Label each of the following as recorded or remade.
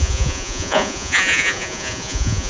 remade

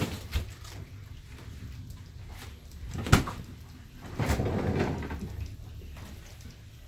recorded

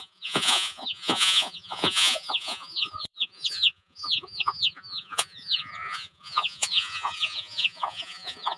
remade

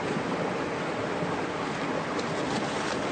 recorded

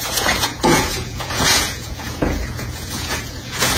remade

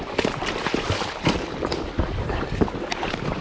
recorded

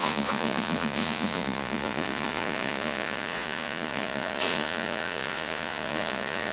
remade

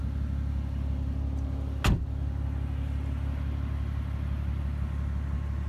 recorded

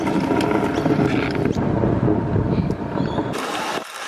recorded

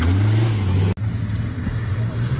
recorded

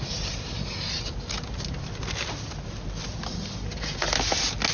recorded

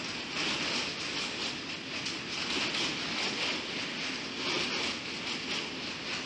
recorded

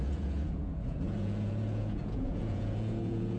remade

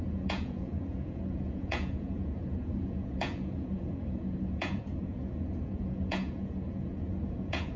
remade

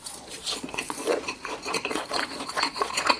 remade